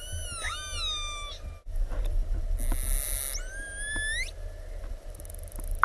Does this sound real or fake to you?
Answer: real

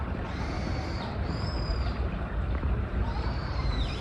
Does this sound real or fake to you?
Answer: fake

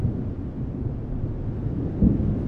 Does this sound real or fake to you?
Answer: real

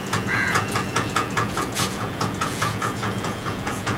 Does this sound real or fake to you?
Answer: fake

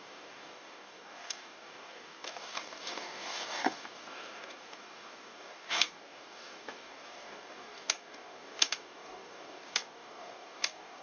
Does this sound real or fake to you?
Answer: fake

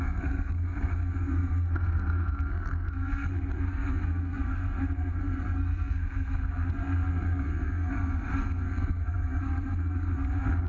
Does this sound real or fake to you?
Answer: fake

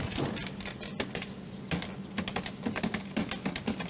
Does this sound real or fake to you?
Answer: real